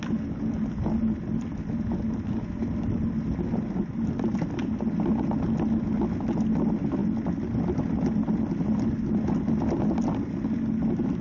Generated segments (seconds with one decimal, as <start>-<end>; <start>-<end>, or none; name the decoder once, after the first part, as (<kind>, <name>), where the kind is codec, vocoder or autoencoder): none